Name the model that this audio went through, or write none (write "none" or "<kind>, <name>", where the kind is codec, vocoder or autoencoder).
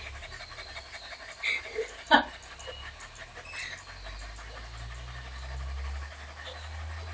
none